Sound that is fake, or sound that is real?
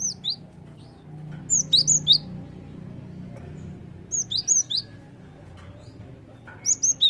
real